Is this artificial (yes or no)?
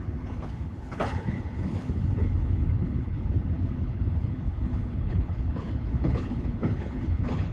yes